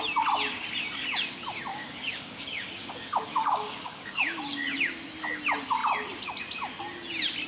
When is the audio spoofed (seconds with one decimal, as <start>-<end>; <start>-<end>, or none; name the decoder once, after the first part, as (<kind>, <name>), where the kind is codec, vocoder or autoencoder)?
1.7-2.9 (codec, DAC); 3.3-4.4